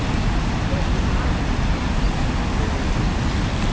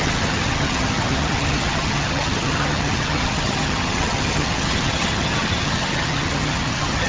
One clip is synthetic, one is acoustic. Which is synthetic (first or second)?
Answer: second